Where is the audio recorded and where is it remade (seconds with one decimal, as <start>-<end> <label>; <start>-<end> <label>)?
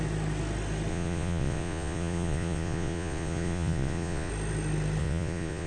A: 0.0-0.9 recorded; 0.9-4.3 remade; 4.3-5.0 recorded; 5.0-5.7 remade